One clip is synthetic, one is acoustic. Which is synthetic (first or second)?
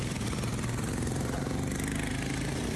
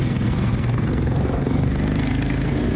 second